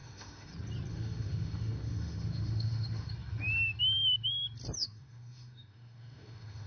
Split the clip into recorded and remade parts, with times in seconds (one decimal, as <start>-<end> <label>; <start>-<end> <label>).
0.0-0.5 remade; 0.5-0.9 recorded; 0.9-3.1 remade; 3.1-4.8 recorded; 4.8-6.7 remade